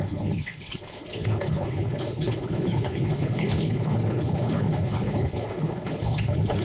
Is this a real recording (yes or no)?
no